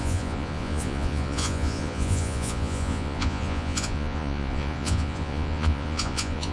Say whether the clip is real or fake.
fake